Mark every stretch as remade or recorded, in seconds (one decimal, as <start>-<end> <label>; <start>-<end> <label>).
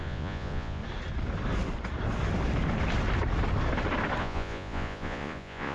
0.0-0.8 remade; 0.8-4.2 recorded; 4.2-5.7 remade